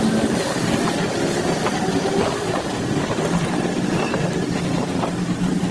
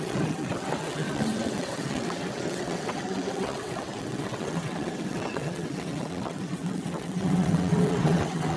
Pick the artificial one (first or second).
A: second